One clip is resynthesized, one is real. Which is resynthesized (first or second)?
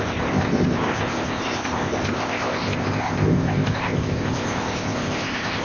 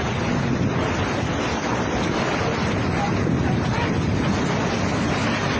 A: first